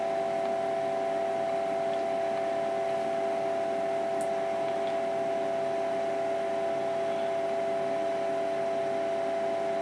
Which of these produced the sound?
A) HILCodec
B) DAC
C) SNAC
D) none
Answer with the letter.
D